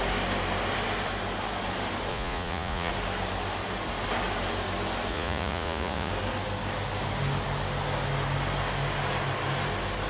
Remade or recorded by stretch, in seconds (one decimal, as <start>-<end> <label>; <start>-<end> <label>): 0.0-2.1 recorded; 2.1-2.9 remade; 2.9-5.1 recorded; 5.1-6.1 remade; 6.1-10.1 recorded